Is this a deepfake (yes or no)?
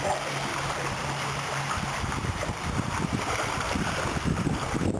yes